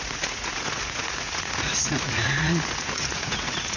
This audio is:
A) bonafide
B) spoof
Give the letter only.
B